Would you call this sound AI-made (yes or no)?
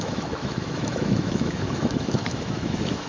yes